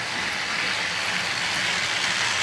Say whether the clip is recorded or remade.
recorded